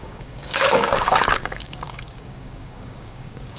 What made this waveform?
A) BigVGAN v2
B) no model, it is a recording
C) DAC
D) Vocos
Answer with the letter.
C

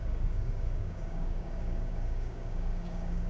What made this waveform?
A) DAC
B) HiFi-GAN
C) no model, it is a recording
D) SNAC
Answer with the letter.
A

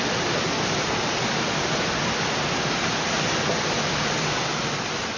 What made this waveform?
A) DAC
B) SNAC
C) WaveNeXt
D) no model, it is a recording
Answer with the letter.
D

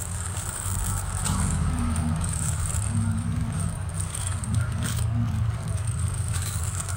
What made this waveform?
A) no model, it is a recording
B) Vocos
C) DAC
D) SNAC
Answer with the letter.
C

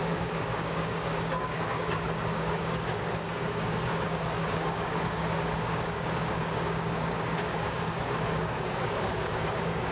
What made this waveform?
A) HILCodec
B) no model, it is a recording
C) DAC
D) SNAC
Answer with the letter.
C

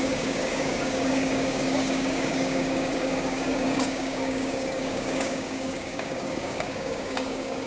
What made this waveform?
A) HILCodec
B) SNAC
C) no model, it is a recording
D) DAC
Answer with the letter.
D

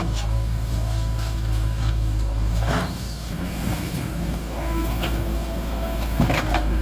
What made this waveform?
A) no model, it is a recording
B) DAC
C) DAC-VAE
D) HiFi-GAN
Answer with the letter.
B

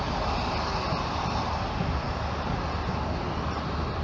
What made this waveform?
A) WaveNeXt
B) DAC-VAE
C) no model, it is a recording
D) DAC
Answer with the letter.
C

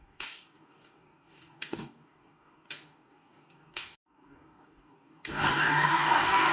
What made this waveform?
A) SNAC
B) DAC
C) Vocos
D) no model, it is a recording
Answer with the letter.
B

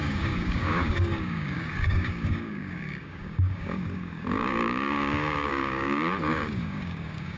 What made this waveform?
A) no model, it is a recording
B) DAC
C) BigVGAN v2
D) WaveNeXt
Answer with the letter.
B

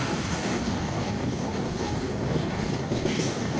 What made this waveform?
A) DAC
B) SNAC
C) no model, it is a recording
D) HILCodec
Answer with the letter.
A